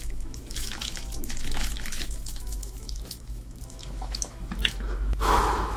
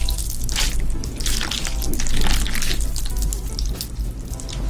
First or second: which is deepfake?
first